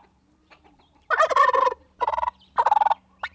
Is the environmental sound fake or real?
real